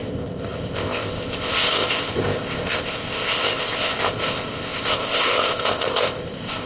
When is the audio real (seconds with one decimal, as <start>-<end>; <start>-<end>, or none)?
none